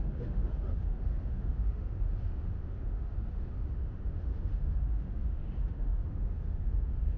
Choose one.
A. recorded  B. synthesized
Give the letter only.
B